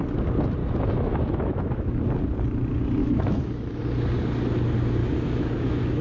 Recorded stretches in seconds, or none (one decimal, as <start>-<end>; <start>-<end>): 0.0-0.6; 1.9-3.0; 3.8-5.0